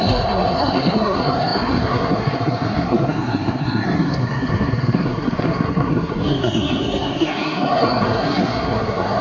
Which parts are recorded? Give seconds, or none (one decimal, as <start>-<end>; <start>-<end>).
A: none